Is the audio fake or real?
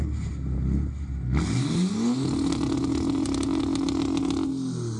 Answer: real